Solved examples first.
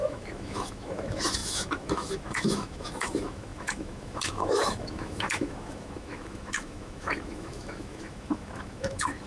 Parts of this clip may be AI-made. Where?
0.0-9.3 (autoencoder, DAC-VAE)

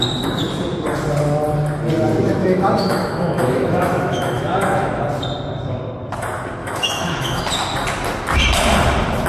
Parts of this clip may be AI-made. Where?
2.4-5.0 (autoencoder, DAC-VAE); 6.6-7.4